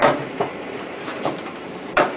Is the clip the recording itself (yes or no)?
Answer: no